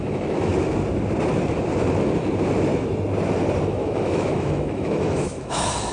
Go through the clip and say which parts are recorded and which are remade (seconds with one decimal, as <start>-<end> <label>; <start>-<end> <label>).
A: 0.0-0.5 remade; 0.5-3.7 recorded; 3.7-5.9 remade